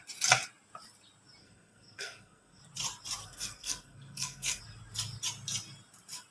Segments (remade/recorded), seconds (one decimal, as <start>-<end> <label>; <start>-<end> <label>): 0.0-1.4 recorded; 1.4-2.6 remade; 2.6-3.2 recorded; 3.2-4.6 remade; 4.6-6.3 recorded